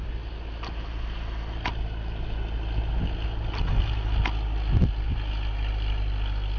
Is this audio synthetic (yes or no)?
no